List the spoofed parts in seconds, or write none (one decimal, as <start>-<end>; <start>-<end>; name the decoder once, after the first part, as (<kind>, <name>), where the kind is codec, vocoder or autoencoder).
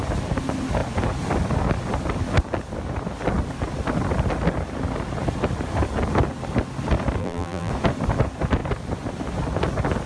7.2-7.7 (vocoder, BigVGAN v2)